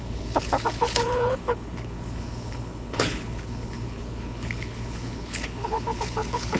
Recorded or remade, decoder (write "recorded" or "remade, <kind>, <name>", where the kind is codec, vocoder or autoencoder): remade, codec, HILCodec